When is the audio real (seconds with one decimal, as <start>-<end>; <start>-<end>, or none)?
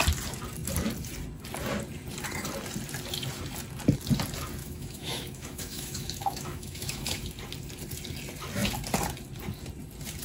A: 0.0-4.6; 7.2-10.2